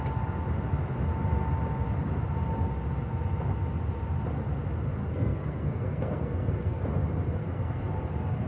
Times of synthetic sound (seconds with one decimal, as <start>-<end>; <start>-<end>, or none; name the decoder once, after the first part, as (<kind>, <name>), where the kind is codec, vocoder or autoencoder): 5.0-6.8 (codec, SNAC); 7.4-8.0